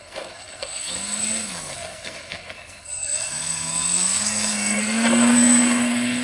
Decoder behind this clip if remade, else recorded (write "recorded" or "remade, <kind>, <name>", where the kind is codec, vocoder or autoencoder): remade, codec, SNAC